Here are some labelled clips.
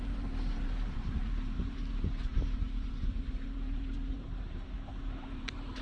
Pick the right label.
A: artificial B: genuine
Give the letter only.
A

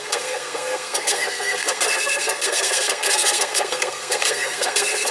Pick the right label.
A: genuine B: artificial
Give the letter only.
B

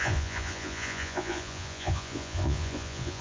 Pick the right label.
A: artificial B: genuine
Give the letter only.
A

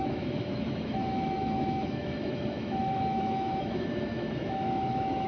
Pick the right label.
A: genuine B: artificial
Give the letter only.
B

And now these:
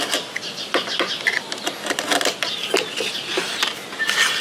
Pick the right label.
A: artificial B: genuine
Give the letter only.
B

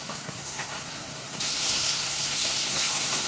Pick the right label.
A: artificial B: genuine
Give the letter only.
A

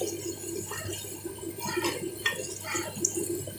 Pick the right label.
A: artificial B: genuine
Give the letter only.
B